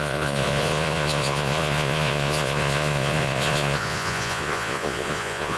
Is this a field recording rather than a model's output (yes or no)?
no